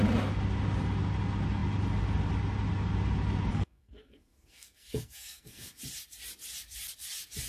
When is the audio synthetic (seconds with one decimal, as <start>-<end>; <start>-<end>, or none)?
3.5-5.8